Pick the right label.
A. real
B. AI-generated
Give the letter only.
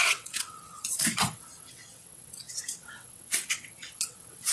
B